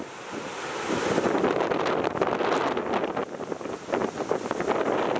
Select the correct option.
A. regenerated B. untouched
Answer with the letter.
B